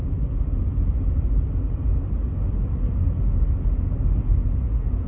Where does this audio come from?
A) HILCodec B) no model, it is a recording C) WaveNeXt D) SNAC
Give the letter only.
B